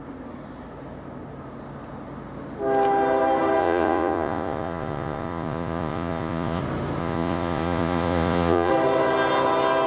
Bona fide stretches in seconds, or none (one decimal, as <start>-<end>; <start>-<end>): 0.0-3.6; 6.6-7.0; 8.7-9.9